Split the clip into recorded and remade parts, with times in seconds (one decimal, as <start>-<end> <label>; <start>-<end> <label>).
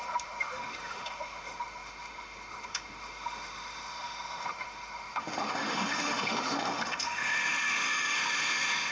0.0-8.9 remade